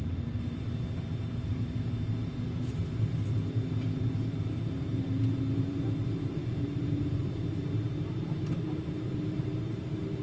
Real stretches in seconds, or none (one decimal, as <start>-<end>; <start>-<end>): 2.8-4.0